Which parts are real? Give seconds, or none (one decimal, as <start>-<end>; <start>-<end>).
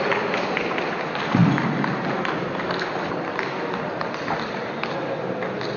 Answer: 0.0-5.8